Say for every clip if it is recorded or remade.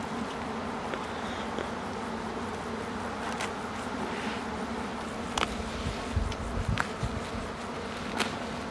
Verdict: recorded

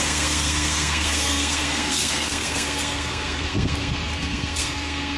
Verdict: remade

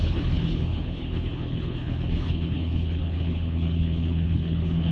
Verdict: remade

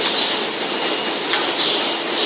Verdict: recorded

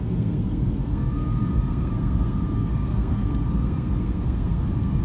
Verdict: remade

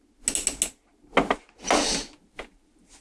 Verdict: recorded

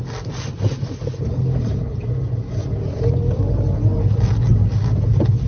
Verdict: recorded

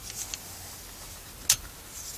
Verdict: recorded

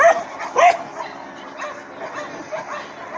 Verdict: recorded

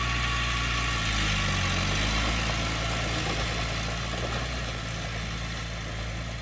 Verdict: recorded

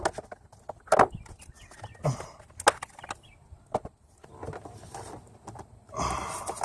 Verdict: recorded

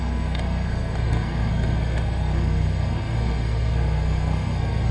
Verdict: remade